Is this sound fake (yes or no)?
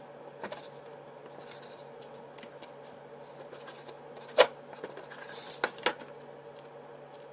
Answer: no